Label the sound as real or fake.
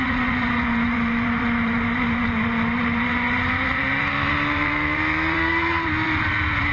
fake